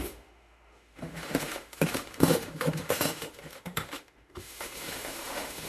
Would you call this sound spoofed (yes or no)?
yes